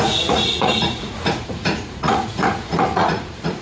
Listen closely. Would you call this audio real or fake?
fake